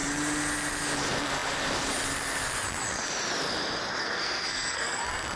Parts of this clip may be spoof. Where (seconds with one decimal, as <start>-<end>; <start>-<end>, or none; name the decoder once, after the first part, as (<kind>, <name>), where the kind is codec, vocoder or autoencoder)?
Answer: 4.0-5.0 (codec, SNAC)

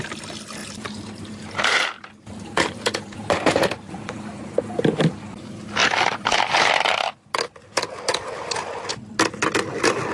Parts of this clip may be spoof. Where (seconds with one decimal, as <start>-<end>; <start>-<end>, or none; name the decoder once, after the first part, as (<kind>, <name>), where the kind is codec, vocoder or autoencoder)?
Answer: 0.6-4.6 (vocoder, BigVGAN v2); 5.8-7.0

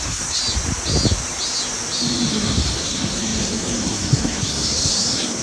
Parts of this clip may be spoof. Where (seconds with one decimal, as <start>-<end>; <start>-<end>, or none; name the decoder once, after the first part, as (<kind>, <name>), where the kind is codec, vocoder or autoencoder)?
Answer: 0.0-0.4 (codec, SNAC); 2.3-5.4